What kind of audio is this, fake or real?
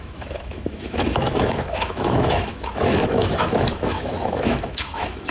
fake